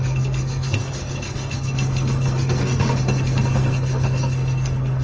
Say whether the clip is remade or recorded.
remade